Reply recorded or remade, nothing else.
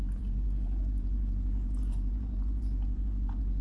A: remade